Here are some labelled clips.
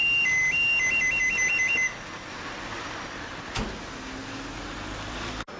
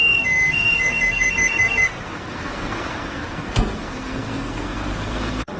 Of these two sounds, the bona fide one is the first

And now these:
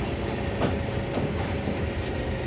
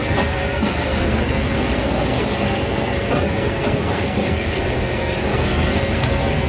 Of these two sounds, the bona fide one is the first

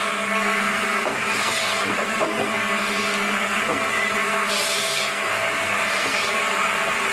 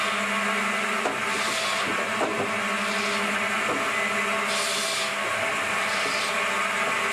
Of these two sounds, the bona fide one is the second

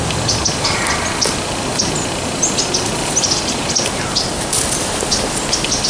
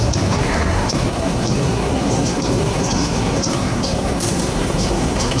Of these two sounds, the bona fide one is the first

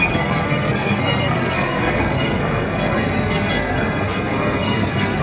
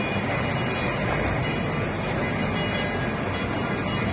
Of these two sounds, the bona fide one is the second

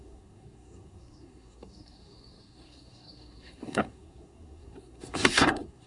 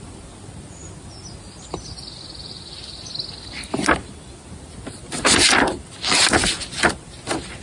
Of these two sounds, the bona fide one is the second